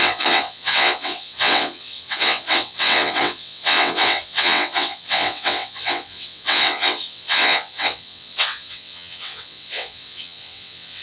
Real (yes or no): no